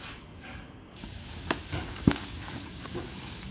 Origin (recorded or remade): remade